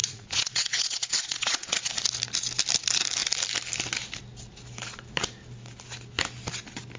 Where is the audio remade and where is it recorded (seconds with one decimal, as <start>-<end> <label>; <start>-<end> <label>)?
0.0-1.9 remade; 1.9-7.0 recorded